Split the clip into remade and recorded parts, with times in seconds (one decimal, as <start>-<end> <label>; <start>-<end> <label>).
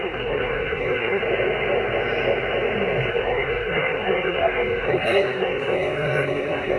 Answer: 0.0-1.2 remade; 1.2-3.1 recorded; 3.1-6.8 remade